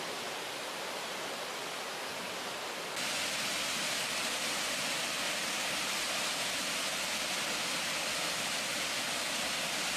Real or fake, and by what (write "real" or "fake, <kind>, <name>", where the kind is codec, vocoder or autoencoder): real